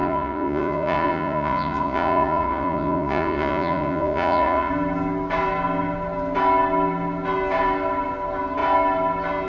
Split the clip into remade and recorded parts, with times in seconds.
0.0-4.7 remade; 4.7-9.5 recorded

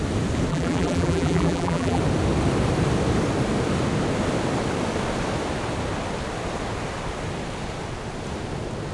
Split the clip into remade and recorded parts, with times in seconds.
0.0-0.5 recorded; 0.5-2.0 remade; 2.0-8.9 recorded

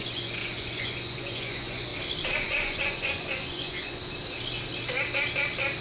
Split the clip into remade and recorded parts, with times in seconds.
0.0-1.9 remade; 1.9-2.4 recorded; 2.4-4.0 remade; 4.0-5.8 recorded

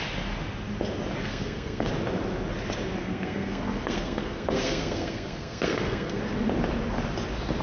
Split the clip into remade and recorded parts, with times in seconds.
0.0-1.2 recorded; 1.2-1.9 remade; 1.9-3.0 recorded; 3.0-6.2 remade; 6.2-7.6 recorded

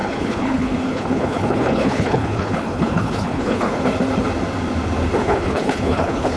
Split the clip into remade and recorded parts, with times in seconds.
0.0-3.8 remade; 3.8-5.2 recorded; 5.2-6.4 remade

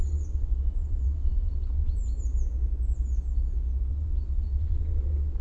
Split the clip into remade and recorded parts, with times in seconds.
0.0-2.0 remade; 2.0-3.9 recorded; 3.9-5.4 remade

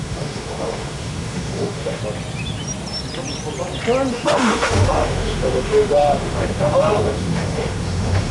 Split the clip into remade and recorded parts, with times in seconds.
0.0-2.0 remade; 2.0-4.1 recorded; 4.1-8.3 remade